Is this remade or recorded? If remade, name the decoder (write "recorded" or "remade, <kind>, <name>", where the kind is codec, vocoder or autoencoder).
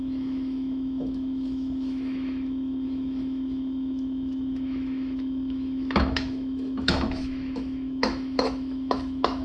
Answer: remade, autoencoder, DAC-VAE